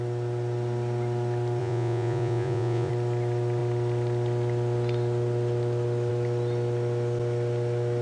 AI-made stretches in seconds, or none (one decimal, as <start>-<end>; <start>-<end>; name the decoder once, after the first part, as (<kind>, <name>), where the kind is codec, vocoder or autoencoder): 1.6-2.9 (vocoder, Vocos)